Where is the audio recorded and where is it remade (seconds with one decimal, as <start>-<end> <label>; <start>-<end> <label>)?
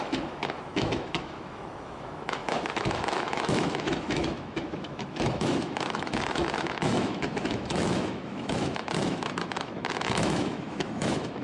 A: 0.0-11.4 remade